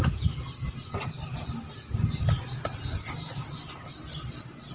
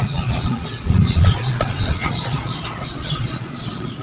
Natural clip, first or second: first